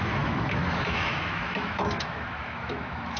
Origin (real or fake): fake